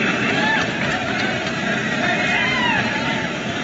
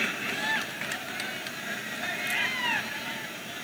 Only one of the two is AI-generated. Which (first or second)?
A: first